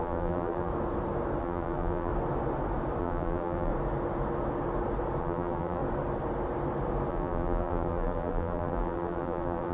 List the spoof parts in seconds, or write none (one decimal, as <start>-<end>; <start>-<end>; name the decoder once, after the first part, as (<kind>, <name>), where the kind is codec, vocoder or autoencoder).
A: 0.0-0.7 (vocoder, BigVGAN v2); 1.4-2.1; 3.0-3.7; 5.2-5.8; 7.1-9.7